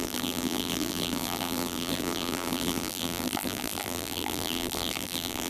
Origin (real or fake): fake